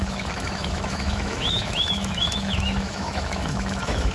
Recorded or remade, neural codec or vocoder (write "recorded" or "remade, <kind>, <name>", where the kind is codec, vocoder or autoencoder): remade, autoencoder, DAC-VAE